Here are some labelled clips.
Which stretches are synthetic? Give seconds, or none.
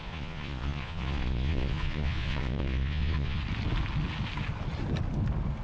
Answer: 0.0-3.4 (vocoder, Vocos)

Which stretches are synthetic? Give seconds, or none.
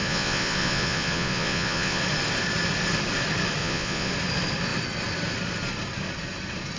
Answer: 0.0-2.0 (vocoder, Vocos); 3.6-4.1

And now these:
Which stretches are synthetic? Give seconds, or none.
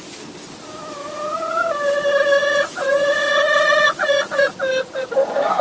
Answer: 1.0-1.6 (vocoder, Vocos); 2.4-4.5